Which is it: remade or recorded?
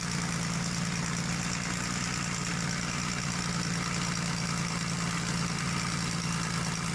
recorded